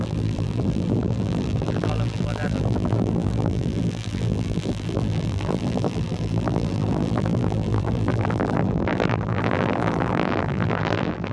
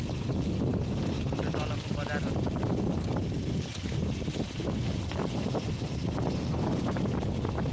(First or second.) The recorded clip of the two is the second